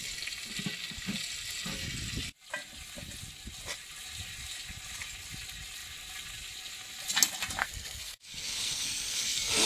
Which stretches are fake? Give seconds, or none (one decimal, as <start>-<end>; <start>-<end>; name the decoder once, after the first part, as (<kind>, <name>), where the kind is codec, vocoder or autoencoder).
7.6-9.7 (codec, SNAC)